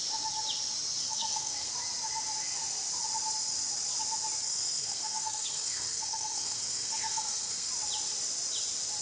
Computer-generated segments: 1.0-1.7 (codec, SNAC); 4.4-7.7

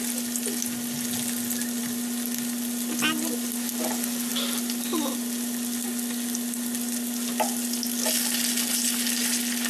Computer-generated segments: none